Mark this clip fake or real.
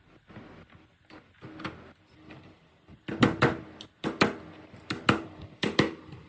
real